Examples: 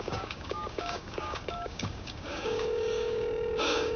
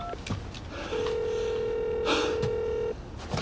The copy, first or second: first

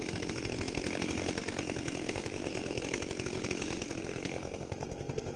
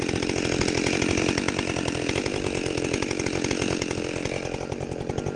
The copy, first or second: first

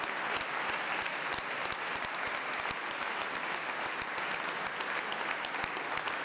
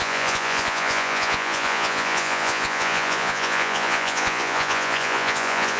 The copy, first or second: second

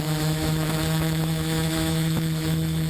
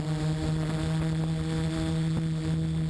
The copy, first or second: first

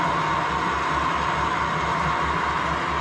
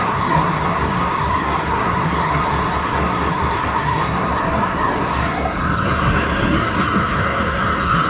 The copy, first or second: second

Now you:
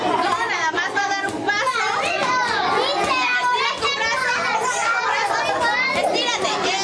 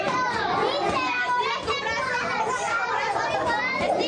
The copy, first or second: second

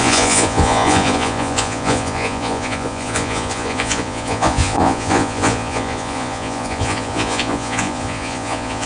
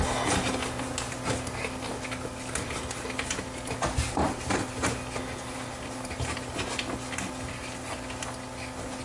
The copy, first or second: first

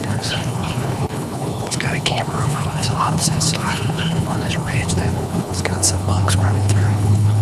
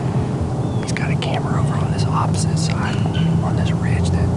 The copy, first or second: first